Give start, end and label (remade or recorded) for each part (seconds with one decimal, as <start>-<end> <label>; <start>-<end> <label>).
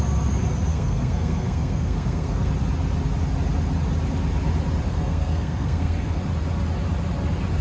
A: 0.0-0.7 recorded; 0.7-2.5 remade; 2.5-4.9 recorded; 4.9-6.2 remade; 6.2-7.6 recorded